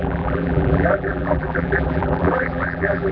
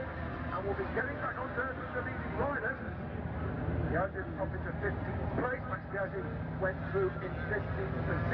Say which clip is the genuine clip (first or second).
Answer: second